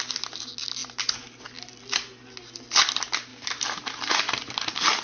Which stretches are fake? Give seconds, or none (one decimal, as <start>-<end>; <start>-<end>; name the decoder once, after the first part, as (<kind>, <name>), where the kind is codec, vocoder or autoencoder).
none